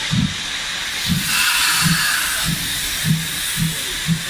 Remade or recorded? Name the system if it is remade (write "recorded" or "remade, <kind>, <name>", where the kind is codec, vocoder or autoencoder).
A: recorded